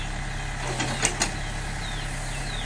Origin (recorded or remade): recorded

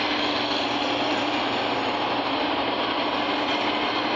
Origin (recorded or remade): recorded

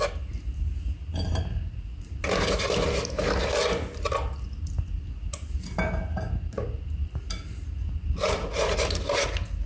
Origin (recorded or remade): recorded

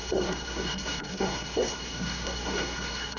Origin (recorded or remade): remade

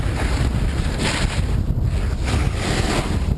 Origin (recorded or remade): recorded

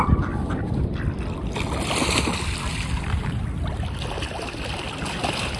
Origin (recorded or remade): recorded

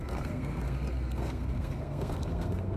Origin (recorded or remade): remade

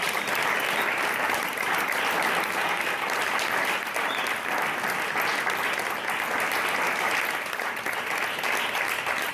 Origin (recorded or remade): recorded